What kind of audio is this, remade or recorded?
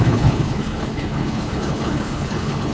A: remade